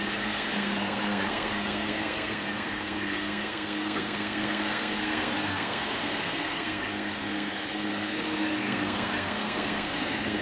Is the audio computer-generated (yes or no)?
yes